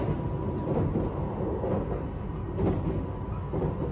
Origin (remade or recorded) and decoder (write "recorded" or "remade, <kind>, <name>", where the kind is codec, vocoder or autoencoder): recorded